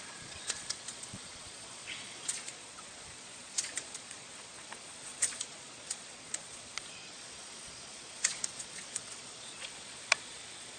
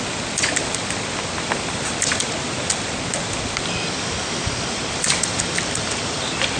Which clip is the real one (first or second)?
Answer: second